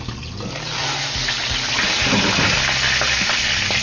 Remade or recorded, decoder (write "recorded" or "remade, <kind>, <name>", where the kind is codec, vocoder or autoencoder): recorded